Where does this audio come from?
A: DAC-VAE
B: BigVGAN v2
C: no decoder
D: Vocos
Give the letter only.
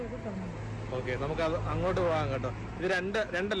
C